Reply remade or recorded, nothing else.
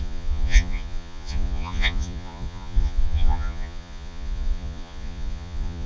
remade